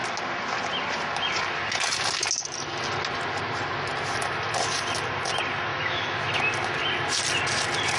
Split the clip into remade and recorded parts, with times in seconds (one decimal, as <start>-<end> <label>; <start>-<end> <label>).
0.0-5.7 recorded; 5.7-6.4 remade; 6.4-8.0 recorded